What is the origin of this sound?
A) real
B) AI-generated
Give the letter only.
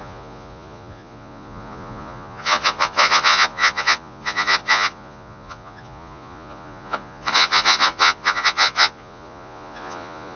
B